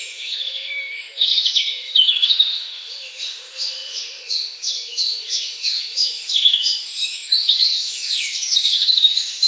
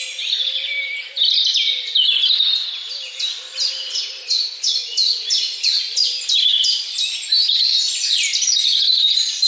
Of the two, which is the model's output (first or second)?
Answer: first